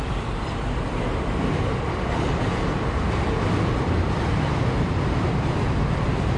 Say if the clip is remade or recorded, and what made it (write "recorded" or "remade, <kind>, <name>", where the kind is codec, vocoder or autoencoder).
remade, vocoder, BigVGAN v2